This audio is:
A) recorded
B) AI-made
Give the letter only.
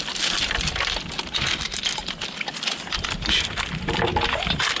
B